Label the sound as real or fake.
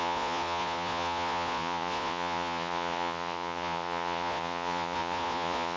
fake